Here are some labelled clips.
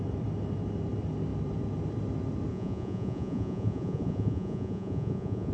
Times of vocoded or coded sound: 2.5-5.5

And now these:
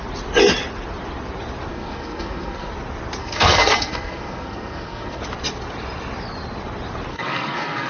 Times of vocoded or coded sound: 1.7-2.7; 3.2-5.2; 7.1-7.9

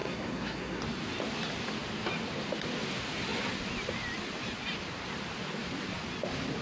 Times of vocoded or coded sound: 0.0-0.8

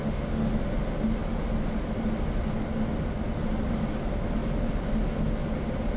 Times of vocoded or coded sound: 0.0-0.6